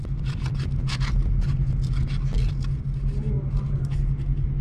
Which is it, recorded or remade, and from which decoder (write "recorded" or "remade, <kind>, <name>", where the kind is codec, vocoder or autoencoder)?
recorded